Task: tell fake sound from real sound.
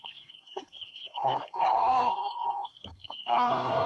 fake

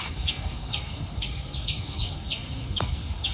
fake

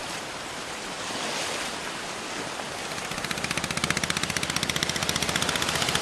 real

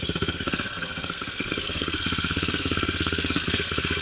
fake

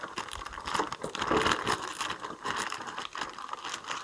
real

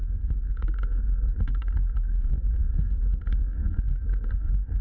fake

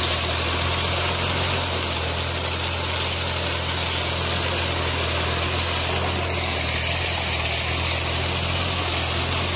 real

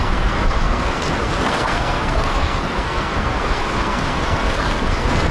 fake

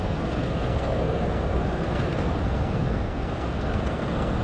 fake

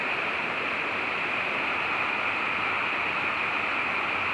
real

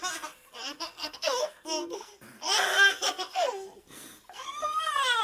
fake